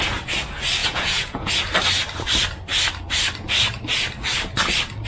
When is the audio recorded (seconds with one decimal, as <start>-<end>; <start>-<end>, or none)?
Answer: 0.0-0.8; 1.5-5.1